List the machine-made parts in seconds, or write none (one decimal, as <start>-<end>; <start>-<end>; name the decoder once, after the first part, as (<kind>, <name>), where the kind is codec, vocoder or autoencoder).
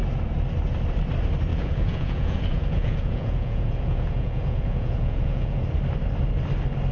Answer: 1.5-5.6 (vocoder, Vocos)